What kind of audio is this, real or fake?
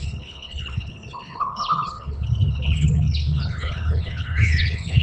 fake